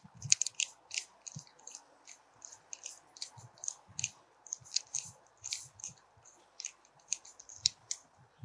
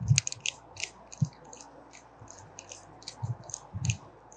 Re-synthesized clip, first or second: first